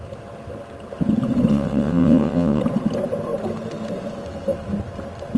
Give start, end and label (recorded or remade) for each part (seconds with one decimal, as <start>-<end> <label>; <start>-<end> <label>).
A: 0.0-1.5 recorded; 1.5-2.6 remade; 2.6-5.4 recorded